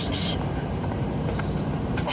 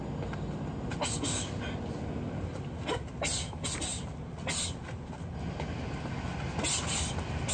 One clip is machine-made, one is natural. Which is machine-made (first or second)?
first